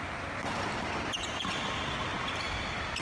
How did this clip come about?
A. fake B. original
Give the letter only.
B